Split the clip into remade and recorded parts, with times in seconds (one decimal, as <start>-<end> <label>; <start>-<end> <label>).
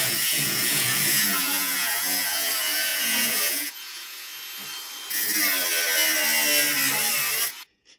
0.0-4.3 remade; 4.3-7.5 recorded; 7.5-8.0 remade